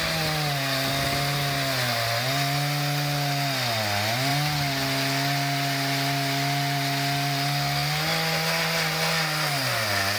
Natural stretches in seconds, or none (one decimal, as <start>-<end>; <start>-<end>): 0.0-10.2